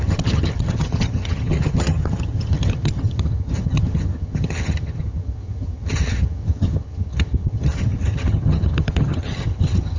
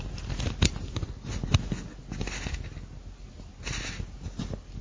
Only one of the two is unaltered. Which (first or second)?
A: second